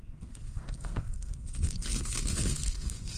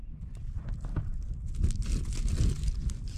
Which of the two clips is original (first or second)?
second